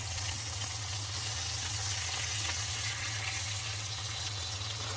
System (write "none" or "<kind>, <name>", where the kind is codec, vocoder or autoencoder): vocoder, WaveNeXt